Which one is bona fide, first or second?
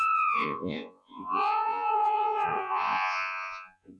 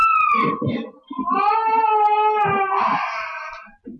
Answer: second